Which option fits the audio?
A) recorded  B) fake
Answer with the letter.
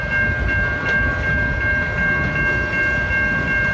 A